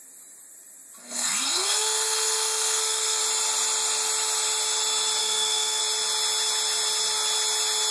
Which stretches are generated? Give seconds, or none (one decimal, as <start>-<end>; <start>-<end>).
1.0-3.2; 5.2-5.8